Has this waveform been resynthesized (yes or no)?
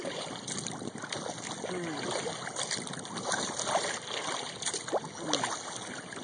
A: no